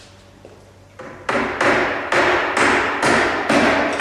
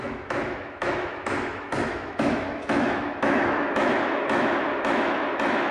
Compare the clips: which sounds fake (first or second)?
second